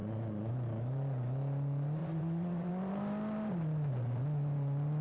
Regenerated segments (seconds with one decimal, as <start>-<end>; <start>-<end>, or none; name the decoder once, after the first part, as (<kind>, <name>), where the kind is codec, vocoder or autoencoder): 0.0-0.5 (vocoder, Vocos); 2.0-2.7